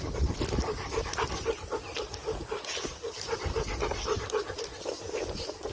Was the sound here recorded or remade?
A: recorded